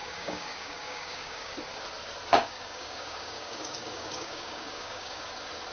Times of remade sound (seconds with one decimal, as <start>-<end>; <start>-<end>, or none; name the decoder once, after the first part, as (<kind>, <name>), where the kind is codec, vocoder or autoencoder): 0.0-1.5 (codec, DAC); 2.3-5.3